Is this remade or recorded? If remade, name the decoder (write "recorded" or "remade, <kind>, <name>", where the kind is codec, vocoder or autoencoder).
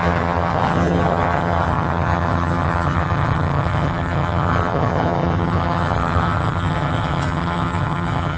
remade, vocoder, HiFi-GAN